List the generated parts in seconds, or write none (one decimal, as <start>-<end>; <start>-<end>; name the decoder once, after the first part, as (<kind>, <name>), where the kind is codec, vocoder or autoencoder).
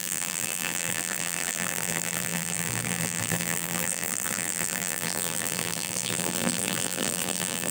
0.0-7.7 (vocoder, BigVGAN v2)